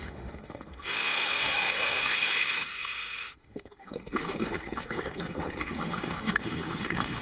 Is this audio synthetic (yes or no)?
yes